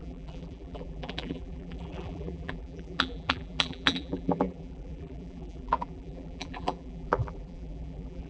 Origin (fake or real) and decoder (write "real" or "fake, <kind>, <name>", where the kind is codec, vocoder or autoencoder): fake, vocoder, BigVGAN v2